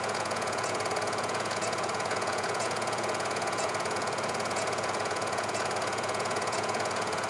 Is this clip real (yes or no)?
no